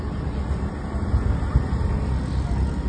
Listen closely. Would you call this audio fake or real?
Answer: real